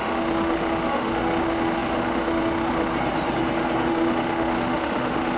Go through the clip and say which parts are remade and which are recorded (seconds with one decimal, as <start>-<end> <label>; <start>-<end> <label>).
0.0-2.9 remade; 2.9-3.9 recorded; 3.9-5.4 remade